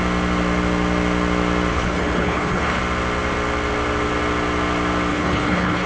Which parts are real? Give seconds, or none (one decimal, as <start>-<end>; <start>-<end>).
0.0-1.7; 2.8-5.1